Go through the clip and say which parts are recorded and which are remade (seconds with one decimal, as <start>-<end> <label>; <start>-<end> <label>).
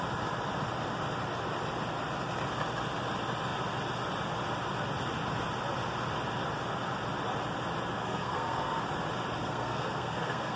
0.0-8.0 recorded; 8.0-8.8 remade; 8.8-9.4 recorded; 9.4-10.6 remade